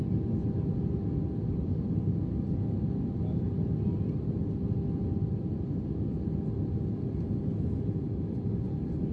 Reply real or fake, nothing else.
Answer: real